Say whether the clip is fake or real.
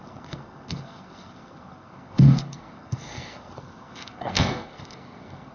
fake